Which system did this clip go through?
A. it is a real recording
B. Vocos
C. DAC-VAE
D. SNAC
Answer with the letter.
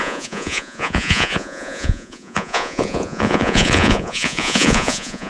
B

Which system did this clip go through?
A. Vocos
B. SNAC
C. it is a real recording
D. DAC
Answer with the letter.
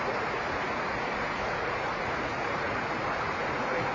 A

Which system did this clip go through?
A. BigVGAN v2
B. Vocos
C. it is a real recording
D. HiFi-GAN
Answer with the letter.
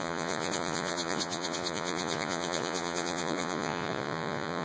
B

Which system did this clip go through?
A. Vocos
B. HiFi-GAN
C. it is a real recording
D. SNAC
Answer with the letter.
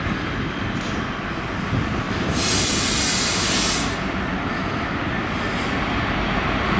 C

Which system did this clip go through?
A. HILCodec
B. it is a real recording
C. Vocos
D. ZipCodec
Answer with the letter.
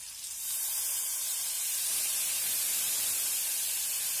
B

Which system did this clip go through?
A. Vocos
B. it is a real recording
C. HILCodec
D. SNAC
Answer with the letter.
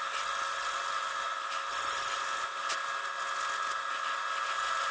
B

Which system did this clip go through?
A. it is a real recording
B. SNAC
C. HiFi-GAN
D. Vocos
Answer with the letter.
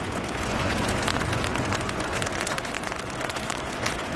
D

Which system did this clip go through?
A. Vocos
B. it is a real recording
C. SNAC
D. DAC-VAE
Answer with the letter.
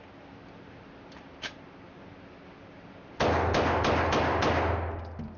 B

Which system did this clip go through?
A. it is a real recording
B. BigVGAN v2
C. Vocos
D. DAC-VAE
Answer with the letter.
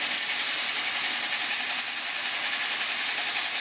A